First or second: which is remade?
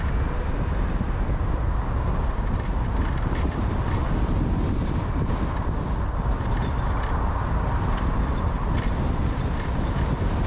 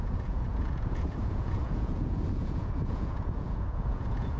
second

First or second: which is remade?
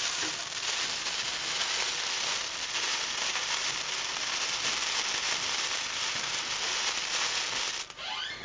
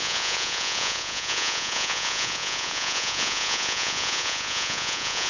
second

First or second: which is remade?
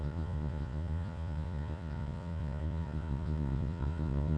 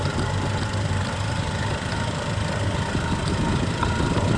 first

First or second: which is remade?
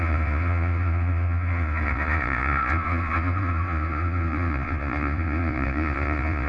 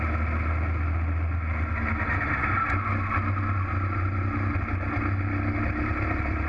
first